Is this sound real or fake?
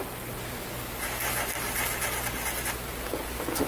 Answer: real